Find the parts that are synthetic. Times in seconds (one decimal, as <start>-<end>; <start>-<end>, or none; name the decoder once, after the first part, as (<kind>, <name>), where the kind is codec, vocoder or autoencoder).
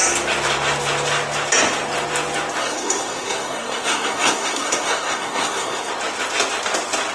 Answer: 2.6-5.9 (codec, SNAC)